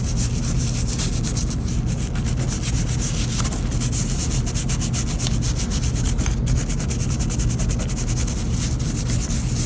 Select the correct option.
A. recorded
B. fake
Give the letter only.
A